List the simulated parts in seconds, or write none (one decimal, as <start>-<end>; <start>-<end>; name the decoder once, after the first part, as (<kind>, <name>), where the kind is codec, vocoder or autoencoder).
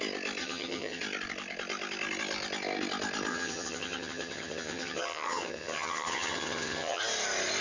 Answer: 0.4-1.0 (vocoder, HiFi-GAN); 3.3-7.0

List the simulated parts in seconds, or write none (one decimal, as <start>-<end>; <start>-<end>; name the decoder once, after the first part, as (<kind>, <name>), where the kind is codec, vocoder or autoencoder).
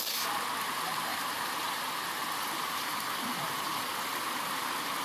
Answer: 1.1-4.1 (vocoder, BigVGAN v2)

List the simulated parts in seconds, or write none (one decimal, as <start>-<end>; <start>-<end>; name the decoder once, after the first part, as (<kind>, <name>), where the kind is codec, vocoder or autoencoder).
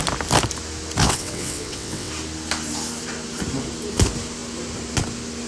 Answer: 1.0-2.1 (vocoder, WaveNeXt)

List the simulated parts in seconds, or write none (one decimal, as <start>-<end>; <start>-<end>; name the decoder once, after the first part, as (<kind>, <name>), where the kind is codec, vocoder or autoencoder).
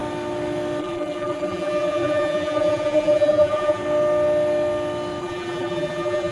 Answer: 0.8-3.8 (vocoder, BigVGAN v2); 5.2-6.3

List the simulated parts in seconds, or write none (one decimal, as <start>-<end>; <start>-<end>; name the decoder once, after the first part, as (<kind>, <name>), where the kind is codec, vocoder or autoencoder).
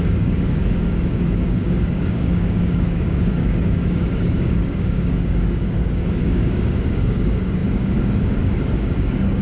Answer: 0.0-9.4 (codec, DAC)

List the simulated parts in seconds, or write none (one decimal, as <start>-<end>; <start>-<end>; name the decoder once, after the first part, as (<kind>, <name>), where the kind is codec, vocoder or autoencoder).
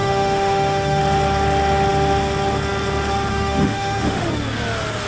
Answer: 0.0-1.0 (autoencoder, DAC-VAE); 3.3-4.3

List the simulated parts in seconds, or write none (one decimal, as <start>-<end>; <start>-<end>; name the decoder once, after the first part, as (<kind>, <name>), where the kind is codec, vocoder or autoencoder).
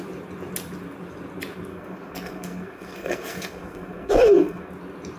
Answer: 1.7-4.7 (codec, SNAC)